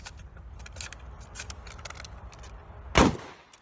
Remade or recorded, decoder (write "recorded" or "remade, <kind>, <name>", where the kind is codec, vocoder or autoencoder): recorded